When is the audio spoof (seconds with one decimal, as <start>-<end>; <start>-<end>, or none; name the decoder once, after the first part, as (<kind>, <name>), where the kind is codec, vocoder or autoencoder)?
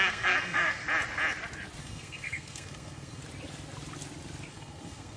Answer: 0.0-0.8 (codec, SNAC); 1.8-3.2; 4.5-5.2